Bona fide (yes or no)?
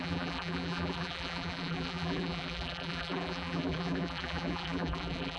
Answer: no